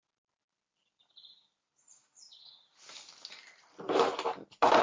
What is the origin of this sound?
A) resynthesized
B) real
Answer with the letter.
B